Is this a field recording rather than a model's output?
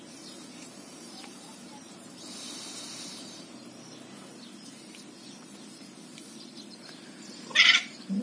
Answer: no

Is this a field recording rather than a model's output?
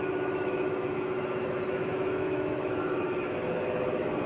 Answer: no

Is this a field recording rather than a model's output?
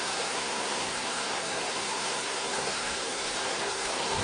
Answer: no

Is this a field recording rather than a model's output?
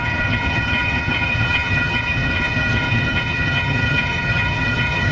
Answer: no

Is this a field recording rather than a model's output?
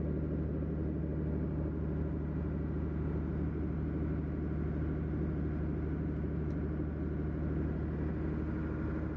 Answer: yes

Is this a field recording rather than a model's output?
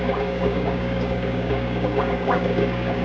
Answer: no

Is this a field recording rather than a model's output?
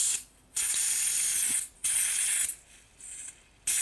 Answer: yes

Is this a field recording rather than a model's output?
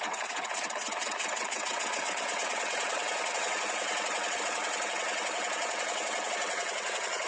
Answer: no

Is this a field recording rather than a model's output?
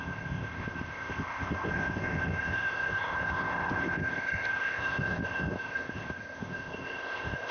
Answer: no